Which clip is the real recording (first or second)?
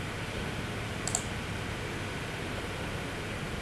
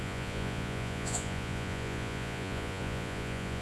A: first